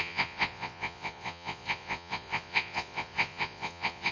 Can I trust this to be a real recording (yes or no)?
no